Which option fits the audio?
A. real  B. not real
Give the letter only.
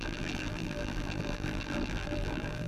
B